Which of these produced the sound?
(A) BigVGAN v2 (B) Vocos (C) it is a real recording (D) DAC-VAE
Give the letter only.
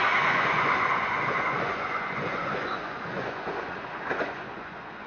B